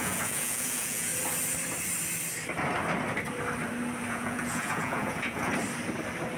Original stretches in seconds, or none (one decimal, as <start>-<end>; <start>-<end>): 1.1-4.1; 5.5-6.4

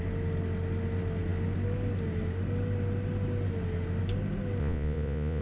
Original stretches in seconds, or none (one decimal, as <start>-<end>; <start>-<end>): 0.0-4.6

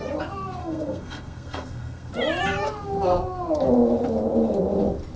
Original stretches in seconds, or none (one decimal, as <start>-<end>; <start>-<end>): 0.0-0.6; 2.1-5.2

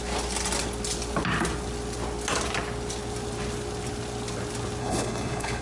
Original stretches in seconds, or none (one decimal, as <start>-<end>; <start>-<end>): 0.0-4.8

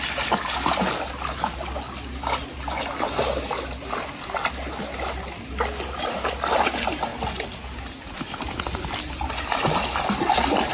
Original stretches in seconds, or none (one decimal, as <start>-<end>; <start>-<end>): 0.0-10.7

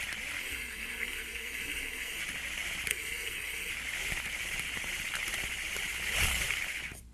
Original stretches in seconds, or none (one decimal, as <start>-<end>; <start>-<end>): 0.0-0.4; 2.2-2.9; 3.7-7.1